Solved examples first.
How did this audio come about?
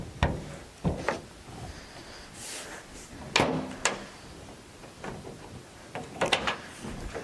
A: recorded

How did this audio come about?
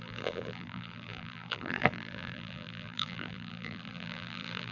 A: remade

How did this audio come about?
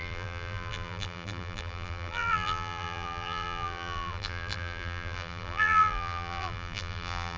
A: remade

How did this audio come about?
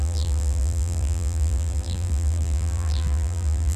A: remade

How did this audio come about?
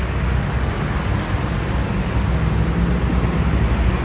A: recorded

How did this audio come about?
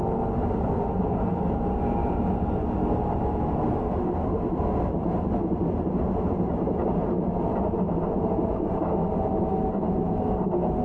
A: recorded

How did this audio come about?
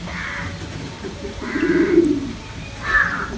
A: remade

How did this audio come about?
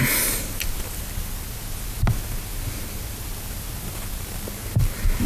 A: recorded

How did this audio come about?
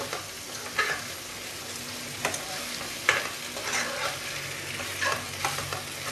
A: recorded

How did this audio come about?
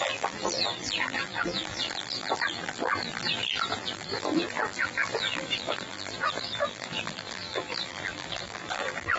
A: remade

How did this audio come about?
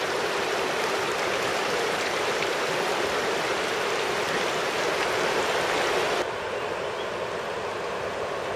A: remade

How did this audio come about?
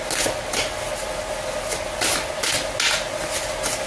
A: recorded